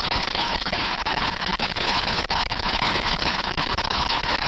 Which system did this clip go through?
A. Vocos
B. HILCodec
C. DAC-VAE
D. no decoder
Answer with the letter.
B